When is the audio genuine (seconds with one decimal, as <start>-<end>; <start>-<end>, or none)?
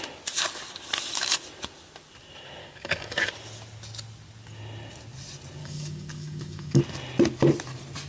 0.0-2.6; 3.3-5.6; 6.8-8.1